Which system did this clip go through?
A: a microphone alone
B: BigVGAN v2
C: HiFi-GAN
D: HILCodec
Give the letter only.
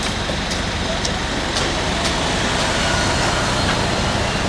A